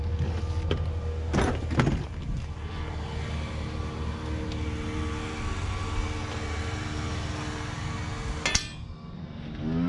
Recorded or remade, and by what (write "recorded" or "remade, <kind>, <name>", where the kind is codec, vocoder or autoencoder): recorded